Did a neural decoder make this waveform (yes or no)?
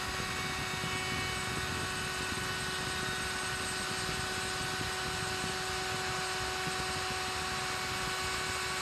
no